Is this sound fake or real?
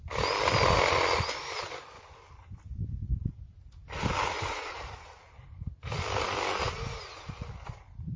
real